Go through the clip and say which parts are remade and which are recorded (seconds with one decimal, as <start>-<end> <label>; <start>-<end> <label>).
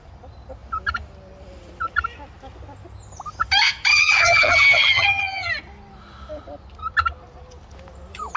0.0-3.9 recorded; 3.9-5.5 remade; 5.5-8.4 recorded